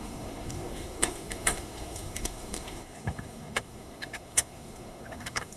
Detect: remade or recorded remade